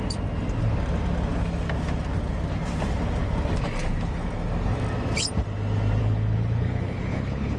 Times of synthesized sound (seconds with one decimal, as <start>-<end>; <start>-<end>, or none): 6.0-7.6